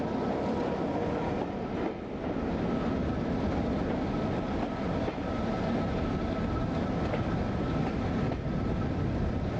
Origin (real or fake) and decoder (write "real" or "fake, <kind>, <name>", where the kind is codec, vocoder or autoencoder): real